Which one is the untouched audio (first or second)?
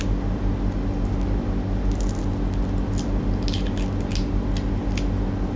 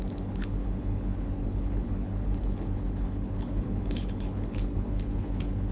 first